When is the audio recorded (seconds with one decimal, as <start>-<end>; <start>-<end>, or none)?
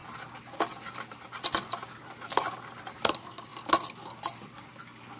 0.0-5.2